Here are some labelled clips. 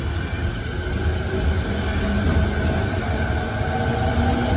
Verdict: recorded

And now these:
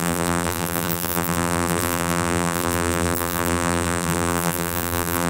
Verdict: remade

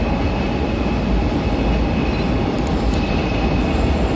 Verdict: recorded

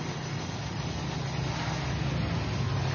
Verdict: recorded